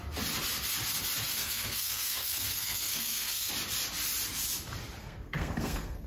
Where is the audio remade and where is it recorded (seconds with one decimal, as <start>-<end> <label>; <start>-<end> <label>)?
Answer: 0.0-1.3 recorded; 1.3-3.5 remade; 3.5-5.0 recorded; 5.0-6.1 remade